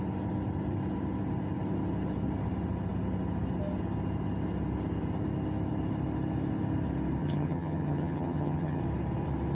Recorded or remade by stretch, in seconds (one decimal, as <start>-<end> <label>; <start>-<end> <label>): 0.0-7.2 recorded; 7.2-8.8 remade; 8.8-9.5 recorded